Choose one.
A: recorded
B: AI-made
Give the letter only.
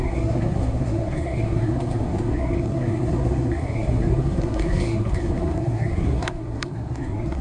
B